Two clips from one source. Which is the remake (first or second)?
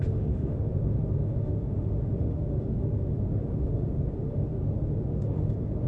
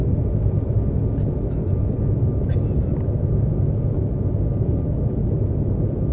first